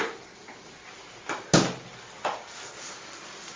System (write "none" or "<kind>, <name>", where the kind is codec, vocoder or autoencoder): none